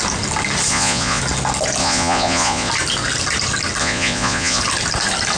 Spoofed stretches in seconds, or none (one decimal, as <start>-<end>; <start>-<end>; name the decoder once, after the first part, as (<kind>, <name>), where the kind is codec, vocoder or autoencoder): 0.7-1.2 (vocoder, Vocos); 1.8-2.7; 3.8-4.6